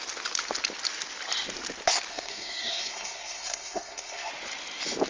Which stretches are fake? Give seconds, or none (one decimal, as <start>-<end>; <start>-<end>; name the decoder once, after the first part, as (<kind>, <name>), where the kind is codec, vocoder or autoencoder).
2.1-4.3 (codec, SNAC)